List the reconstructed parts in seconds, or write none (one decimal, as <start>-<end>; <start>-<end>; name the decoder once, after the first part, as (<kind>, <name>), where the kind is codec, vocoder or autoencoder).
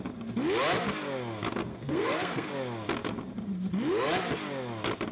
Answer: 1.7-2.5 (codec, SNAC)